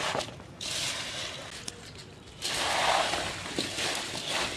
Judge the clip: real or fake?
real